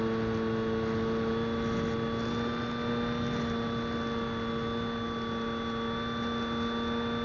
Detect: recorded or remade recorded